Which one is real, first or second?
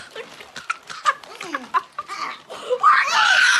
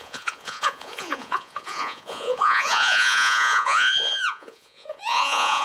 first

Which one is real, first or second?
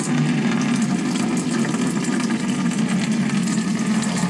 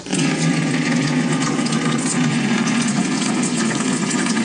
first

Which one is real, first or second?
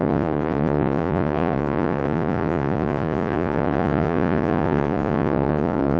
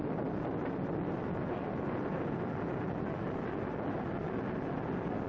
second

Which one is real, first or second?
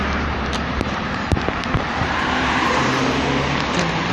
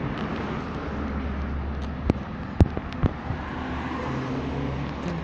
second